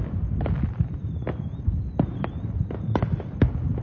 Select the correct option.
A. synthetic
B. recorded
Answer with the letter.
B